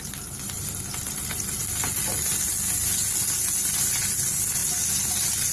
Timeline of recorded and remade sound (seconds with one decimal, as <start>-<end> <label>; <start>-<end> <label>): 0.0-5.5 recorded